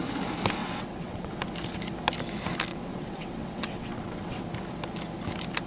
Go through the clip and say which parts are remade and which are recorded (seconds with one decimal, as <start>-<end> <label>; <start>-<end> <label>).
0.0-0.6 recorded; 0.6-1.4 remade; 1.4-2.7 recorded; 2.7-4.4 remade; 4.4-5.7 recorded